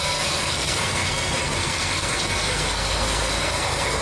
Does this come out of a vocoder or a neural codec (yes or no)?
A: yes